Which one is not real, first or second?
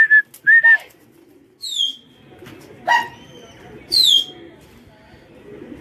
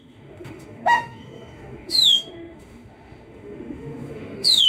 second